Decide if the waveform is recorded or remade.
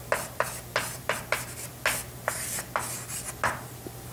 recorded